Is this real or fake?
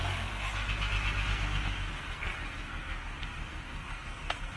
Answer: fake